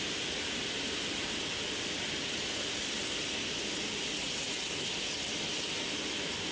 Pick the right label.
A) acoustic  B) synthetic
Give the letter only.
A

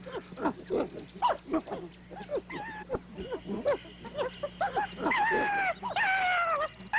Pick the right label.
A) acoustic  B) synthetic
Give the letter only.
A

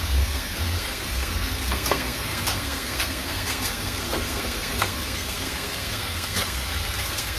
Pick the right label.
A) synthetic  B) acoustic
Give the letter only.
A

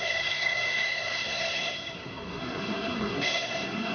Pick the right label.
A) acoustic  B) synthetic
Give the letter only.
B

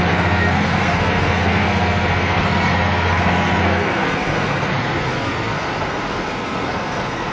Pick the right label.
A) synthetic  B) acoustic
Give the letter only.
A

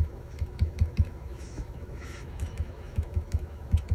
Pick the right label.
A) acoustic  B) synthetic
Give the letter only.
B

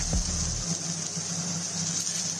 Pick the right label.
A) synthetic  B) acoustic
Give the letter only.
B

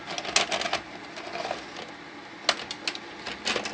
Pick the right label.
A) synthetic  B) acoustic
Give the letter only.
B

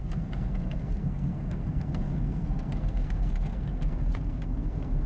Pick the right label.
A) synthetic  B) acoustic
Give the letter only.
A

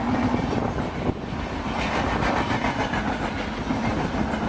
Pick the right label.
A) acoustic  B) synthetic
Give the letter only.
A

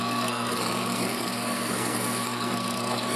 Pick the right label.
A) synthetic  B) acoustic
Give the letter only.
A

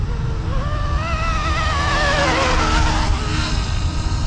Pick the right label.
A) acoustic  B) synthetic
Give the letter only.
A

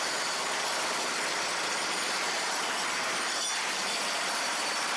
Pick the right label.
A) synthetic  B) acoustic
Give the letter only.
B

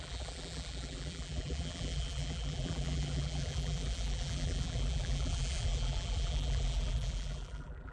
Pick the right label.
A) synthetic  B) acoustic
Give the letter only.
A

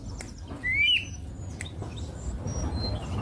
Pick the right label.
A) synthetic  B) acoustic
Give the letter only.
B